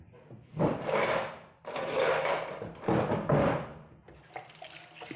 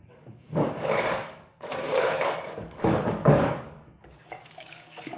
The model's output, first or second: second